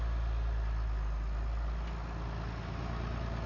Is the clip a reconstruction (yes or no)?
no